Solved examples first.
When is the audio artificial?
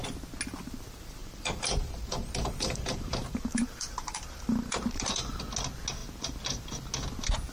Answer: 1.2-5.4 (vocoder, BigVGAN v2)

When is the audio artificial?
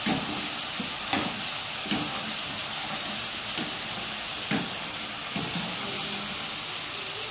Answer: 2.6-4.8 (vocoder, BigVGAN v2)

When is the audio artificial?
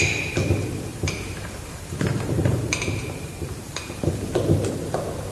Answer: 0.9-4.1 (vocoder, BigVGAN v2)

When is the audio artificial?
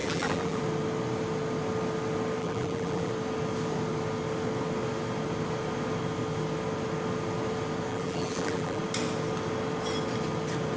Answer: 0.0-0.6 (vocoder, BigVGAN v2); 2.4-3.1; 7.9-8.8